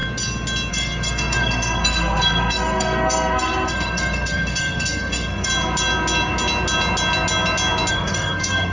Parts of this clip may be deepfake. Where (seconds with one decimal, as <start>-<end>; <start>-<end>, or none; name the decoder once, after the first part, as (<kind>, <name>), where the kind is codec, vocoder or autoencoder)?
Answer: 0.7-5.5 (codec, SNAC); 7.9-8.7